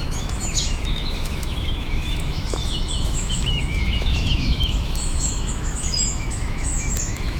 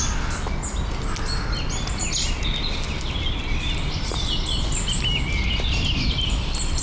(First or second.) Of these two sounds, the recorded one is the second